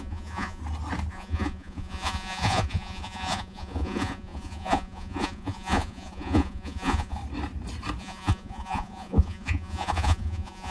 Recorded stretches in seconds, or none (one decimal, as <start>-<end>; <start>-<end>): 0.6-1.1; 7.2-8.0